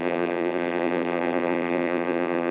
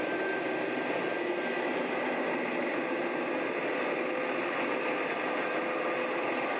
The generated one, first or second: first